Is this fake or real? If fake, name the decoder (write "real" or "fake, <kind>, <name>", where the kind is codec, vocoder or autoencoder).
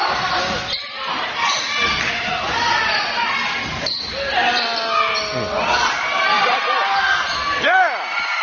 real